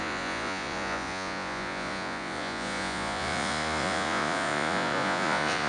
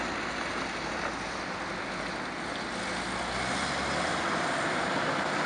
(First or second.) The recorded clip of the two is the second